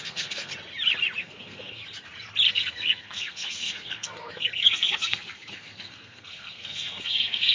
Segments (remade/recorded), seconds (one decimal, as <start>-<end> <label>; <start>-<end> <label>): 0.0-0.5 remade; 0.5-1.2 recorded; 1.2-1.8 remade; 1.8-2.5 recorded; 2.5-7.5 remade